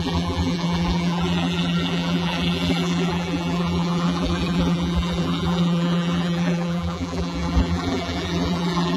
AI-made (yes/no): yes